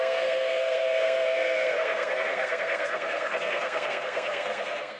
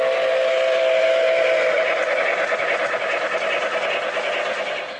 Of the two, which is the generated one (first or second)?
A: first